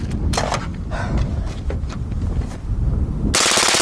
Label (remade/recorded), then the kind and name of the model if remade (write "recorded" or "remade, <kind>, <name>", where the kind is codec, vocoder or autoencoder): recorded